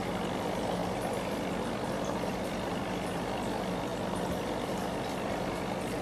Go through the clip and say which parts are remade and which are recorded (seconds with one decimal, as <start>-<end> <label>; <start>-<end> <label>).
0.0-6.0 remade